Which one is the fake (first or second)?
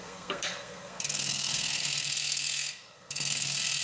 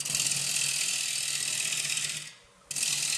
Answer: first